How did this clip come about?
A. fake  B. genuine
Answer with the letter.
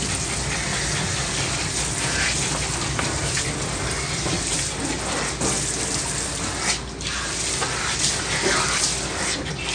B